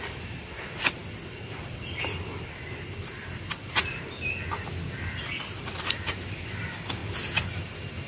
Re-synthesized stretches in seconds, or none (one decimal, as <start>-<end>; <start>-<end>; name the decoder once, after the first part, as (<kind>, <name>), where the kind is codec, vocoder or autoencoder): none